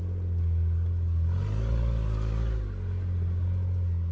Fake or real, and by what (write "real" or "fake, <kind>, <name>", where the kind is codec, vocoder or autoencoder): real